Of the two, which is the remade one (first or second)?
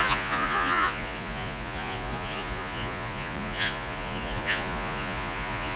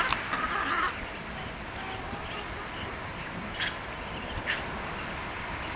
first